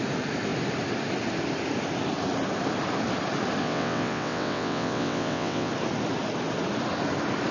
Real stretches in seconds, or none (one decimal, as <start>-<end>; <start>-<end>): 0.0-3.6; 5.7-7.5